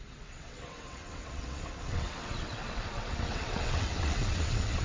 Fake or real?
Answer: fake